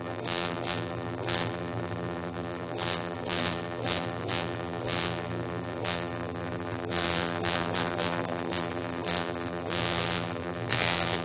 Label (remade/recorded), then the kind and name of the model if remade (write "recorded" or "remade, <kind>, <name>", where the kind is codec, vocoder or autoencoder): remade, vocoder, BigVGAN v2